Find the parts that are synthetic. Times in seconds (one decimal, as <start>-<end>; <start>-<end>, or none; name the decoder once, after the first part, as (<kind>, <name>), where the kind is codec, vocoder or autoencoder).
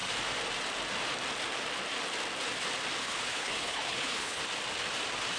3.0-4.4 (codec, HILCodec)